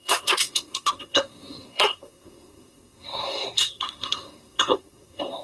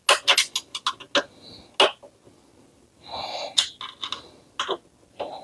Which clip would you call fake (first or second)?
first